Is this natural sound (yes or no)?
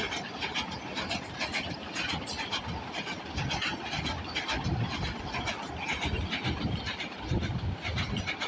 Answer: yes